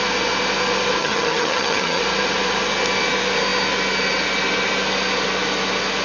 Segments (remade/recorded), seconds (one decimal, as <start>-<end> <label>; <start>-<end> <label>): 0.0-1.0 recorded; 1.0-2.0 remade; 2.0-6.0 recorded